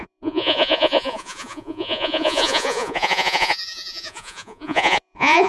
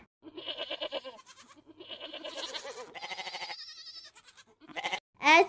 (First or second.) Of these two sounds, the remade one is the first